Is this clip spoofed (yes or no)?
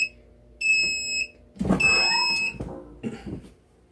no